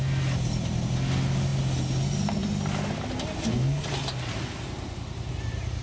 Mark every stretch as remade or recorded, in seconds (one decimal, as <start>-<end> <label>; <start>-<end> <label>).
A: 0.0-5.8 recorded